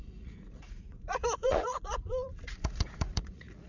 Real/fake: fake